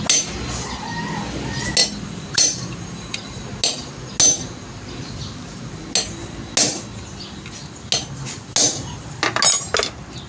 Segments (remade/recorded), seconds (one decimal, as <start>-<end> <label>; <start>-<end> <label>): 0.0-1.8 recorded; 1.8-3.4 remade; 3.4-10.3 recorded